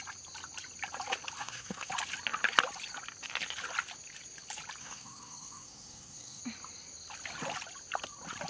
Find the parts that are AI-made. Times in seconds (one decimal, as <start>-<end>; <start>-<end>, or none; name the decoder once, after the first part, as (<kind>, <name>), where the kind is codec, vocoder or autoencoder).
1.4-1.9 (codec, SNAC); 4.8-6.4